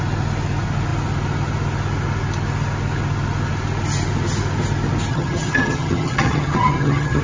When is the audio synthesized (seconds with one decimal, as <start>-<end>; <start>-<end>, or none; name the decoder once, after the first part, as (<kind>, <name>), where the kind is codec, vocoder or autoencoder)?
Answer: 5.1-7.2 (vocoder, HiFi-GAN)